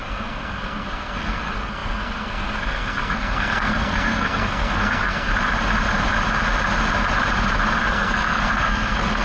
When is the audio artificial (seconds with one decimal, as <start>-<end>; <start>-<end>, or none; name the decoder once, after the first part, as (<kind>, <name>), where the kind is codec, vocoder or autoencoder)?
0.0-5.3 (codec, SNAC); 7.9-9.2